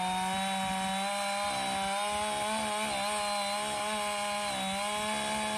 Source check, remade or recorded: recorded